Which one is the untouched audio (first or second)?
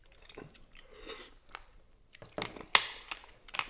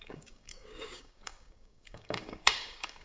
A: first